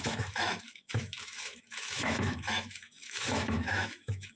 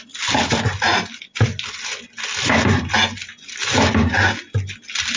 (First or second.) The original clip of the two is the second